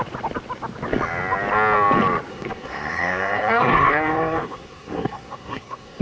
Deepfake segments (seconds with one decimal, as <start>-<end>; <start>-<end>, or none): 2.3-6.0